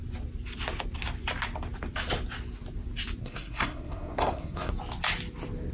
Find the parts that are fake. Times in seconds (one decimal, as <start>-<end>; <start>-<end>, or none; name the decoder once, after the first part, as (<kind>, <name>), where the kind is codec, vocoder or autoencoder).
3.2-4.7 (codec, SNAC)